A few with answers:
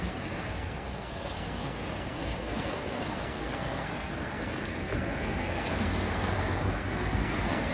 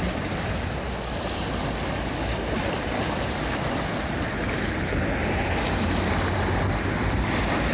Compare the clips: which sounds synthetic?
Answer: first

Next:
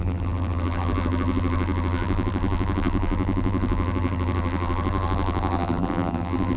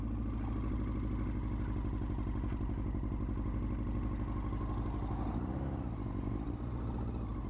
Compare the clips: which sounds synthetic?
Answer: first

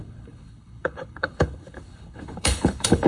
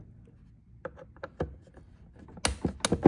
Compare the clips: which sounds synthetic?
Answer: first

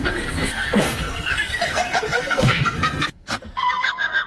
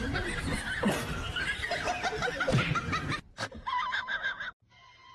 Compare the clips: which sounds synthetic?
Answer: first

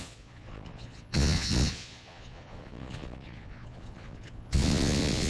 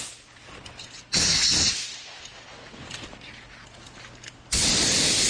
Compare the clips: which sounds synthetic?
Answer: first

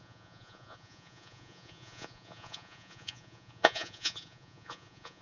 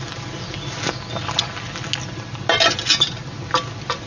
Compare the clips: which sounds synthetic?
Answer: first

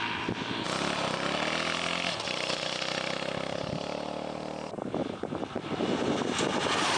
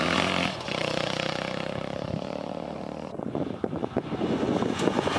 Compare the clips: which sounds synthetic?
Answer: second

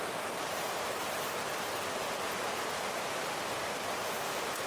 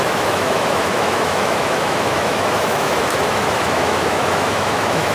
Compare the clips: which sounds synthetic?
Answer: second